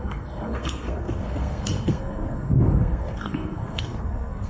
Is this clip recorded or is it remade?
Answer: remade